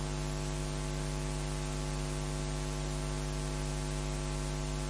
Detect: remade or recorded recorded